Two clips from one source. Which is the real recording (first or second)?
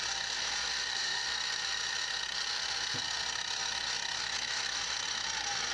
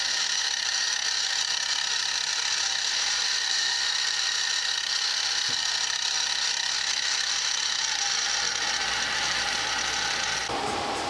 first